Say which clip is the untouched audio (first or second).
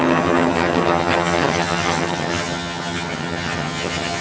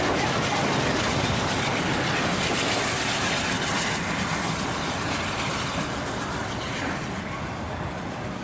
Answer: second